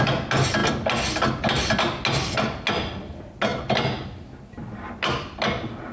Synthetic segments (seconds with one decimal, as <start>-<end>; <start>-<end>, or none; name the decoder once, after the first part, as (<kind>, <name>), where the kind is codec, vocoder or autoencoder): none